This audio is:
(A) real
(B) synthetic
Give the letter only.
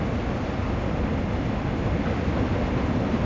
A